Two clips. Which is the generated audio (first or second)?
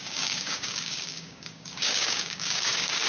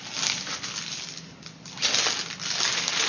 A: first